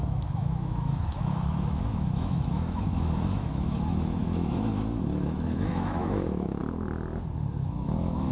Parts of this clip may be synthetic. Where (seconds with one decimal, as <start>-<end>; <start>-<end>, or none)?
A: 0.0-6.6; 7.5-8.3